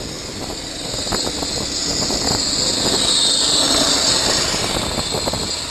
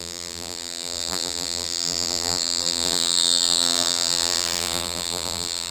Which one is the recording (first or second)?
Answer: first